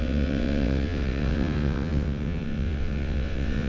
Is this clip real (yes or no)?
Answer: no